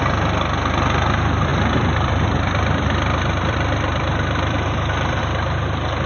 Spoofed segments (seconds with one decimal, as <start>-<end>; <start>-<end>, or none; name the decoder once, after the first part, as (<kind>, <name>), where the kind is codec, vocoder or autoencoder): 1.5-5.2 (vocoder, BigVGAN v2)